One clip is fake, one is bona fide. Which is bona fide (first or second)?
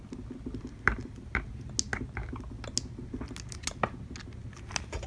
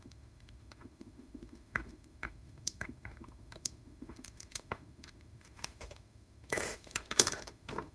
first